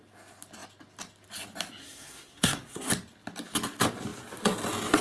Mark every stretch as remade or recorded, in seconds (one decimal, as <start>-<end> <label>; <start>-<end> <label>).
0.0-1.8 recorded; 1.8-2.9 remade; 2.9-5.0 recorded

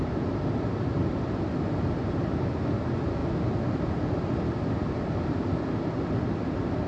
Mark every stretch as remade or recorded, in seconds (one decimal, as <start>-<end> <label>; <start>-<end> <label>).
0.0-6.9 recorded

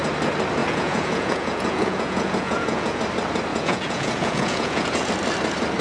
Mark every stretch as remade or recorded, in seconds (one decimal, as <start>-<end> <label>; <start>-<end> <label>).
0.0-0.6 recorded; 0.6-3.0 remade; 3.0-3.5 recorded; 3.5-5.1 remade; 5.1-5.8 recorded

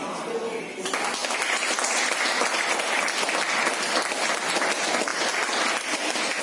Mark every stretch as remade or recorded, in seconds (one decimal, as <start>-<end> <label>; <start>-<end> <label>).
0.0-6.4 recorded